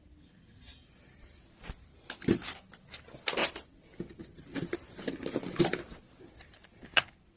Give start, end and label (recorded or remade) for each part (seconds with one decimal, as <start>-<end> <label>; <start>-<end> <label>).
0.0-7.4 recorded